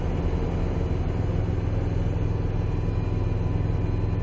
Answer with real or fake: real